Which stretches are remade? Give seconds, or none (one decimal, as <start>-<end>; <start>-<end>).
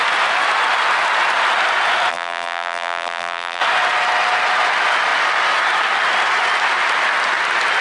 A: 2.1-3.6